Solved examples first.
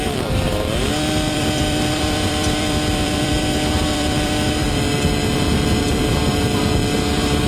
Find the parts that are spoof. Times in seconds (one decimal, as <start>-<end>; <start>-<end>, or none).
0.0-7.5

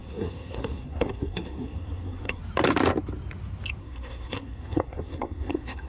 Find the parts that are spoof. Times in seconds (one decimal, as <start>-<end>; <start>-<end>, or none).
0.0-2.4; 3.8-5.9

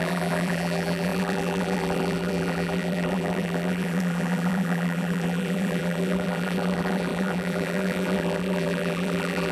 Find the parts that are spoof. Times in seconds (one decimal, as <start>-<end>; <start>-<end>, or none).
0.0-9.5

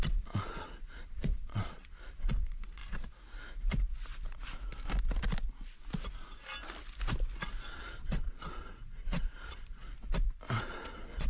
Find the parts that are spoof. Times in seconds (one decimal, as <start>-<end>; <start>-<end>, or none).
0.0-2.8; 7.7-9.9; 10.6-11.3

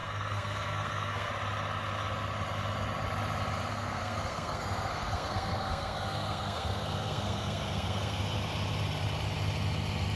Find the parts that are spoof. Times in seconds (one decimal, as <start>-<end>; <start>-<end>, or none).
0.0-1.3; 3.7-8.2